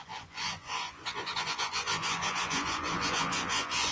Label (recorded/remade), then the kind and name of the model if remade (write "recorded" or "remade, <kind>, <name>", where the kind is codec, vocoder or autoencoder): remade, vocoder, Vocos